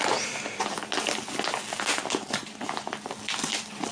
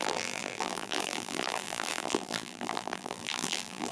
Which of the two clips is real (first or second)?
first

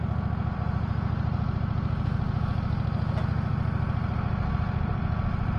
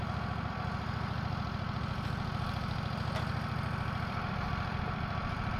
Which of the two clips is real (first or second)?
first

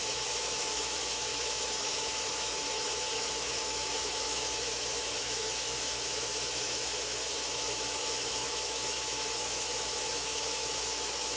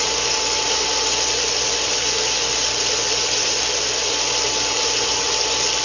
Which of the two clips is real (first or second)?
second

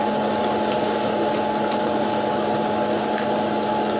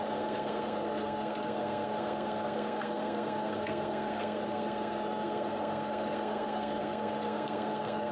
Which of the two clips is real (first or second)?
first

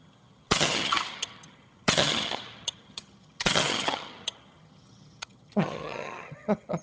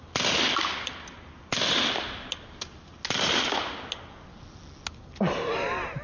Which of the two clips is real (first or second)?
second